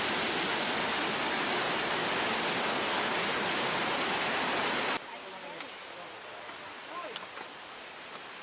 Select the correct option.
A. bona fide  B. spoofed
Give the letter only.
A